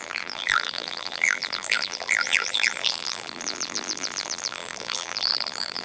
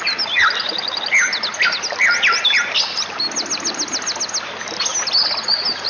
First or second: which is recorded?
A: second